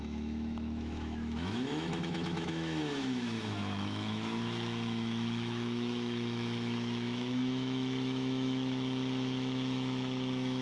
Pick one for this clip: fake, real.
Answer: fake